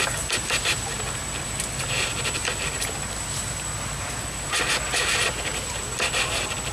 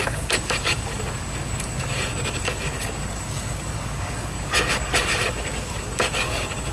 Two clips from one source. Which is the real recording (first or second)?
first